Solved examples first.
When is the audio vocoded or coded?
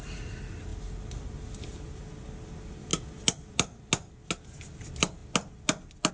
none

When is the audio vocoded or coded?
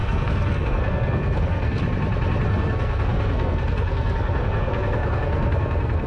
0.0-1.8; 2.5-6.1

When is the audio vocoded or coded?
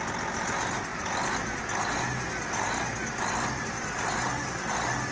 none